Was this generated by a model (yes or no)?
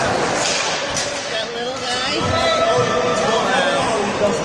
no